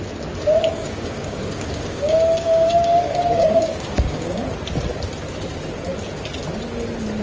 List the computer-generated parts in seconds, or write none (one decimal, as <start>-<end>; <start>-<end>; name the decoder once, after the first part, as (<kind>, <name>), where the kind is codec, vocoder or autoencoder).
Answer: 0.7-4.4 (codec, DAC)